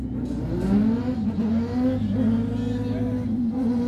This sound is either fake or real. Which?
real